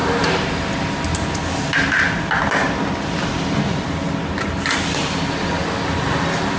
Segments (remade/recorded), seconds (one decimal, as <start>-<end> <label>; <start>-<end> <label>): 0.0-6.6 recorded